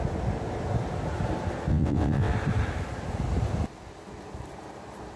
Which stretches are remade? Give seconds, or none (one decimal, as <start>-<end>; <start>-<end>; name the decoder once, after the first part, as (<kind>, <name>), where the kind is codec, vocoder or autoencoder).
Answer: 1.7-2.3 (vocoder, WaveNeXt)